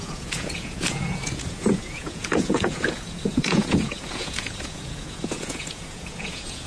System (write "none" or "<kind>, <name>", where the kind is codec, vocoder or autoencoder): vocoder, Vocos